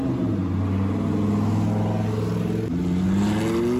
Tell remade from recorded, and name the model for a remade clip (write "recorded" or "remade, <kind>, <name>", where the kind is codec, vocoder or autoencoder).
recorded